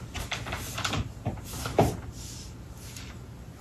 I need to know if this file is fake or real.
real